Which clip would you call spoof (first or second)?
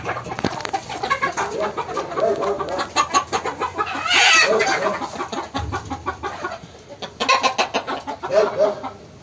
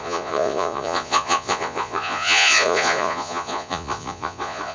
second